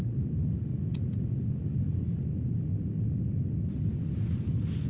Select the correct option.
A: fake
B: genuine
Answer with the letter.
B